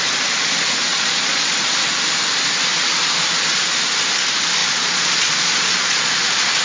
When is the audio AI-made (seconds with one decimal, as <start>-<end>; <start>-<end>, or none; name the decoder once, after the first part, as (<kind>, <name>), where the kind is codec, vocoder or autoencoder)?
0.9-1.5 (vocoder, Vocos); 4.6-6.1